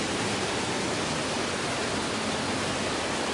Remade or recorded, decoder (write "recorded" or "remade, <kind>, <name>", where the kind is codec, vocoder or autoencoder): recorded